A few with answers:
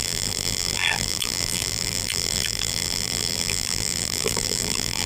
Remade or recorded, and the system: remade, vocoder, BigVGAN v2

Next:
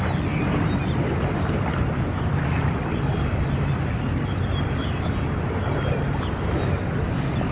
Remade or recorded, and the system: recorded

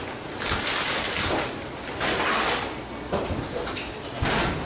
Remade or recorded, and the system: recorded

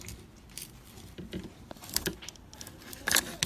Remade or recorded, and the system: recorded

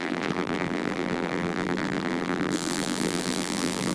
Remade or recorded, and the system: remade, vocoder, BigVGAN v2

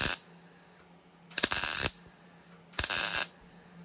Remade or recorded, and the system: recorded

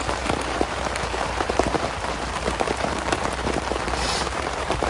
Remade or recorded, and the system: remade, vocoder, BigVGAN v2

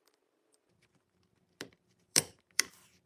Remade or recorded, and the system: remade, vocoder, BigVGAN v2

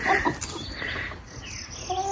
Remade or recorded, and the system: recorded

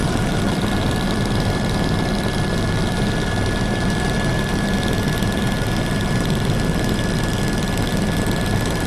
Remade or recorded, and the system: remade, vocoder, BigVGAN v2